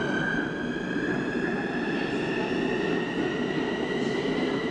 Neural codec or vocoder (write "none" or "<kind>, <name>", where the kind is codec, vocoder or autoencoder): vocoder, BigVGAN v2